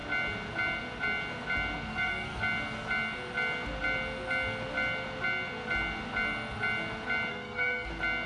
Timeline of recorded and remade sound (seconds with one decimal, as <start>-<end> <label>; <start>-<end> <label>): 0.0-1.9 recorded; 1.9-2.4 remade; 2.4-7.3 recorded; 7.3-7.9 remade; 7.9-8.3 recorded